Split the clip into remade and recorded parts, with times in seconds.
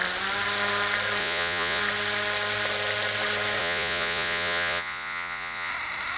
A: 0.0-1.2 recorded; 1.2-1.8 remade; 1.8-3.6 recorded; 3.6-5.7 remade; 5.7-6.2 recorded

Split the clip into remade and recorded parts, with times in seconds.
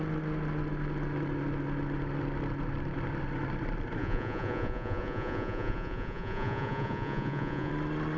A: 0.0-4.0 recorded; 4.0-7.7 remade; 7.7-8.2 recorded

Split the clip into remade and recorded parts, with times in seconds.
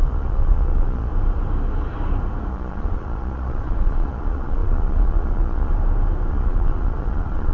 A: 0.0-1.1 remade; 1.1-2.5 recorded; 2.5-5.7 remade; 5.7-6.3 recorded; 6.3-7.5 remade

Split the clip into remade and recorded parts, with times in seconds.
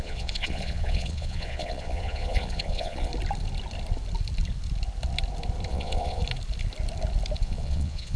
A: 0.0-3.1 remade; 3.1-5.7 recorded; 5.7-6.2 remade; 6.2-7.4 recorded; 7.4-8.2 remade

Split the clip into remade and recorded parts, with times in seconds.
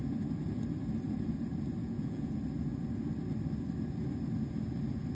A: 0.0-1.8 recorded; 1.8-2.3 remade; 2.3-5.1 recorded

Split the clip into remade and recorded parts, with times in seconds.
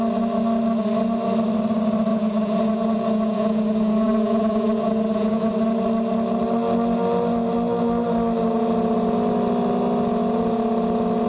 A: 0.0-2.1 recorded; 2.1-5.5 remade; 5.5-11.3 recorded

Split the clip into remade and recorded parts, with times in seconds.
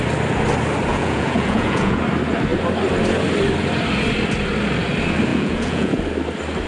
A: 0.0-0.9 recorded; 0.9-2.0 remade; 2.0-5.3 recorded; 5.3-6.0 remade; 6.0-6.7 recorded